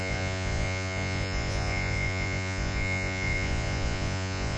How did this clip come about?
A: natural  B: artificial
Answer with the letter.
B